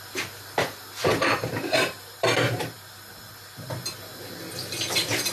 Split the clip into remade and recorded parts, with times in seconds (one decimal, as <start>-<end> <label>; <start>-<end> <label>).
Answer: 0.0-1.0 recorded; 1.0-3.1 remade; 3.1-5.3 recorded